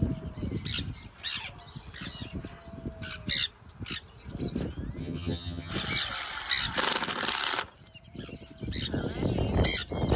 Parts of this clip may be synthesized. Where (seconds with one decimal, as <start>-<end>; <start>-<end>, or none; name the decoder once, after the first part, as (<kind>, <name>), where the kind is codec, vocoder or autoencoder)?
5.0-5.7 (vocoder, HiFi-GAN)